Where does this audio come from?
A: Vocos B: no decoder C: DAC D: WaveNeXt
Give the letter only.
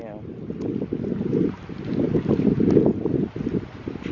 B